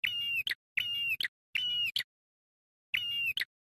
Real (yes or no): yes